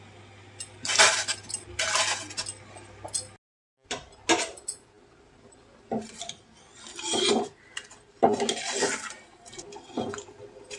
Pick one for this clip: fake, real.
real